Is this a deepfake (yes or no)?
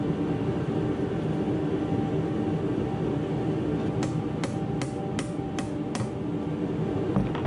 no